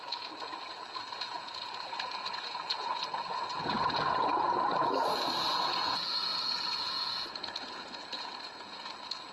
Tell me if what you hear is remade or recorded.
remade